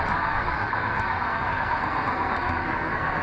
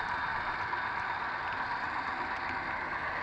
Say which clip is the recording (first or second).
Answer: second